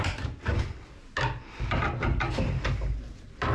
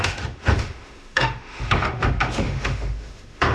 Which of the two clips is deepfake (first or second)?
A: second